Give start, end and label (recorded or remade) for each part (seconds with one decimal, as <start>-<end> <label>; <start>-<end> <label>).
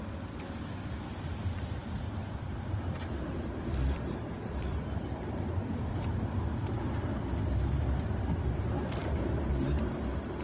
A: 0.0-1.8 recorded; 1.8-6.8 remade; 6.8-9.0 recorded; 9.0-9.5 remade; 9.5-10.4 recorded